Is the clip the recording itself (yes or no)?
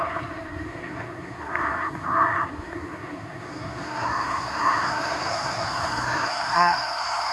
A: no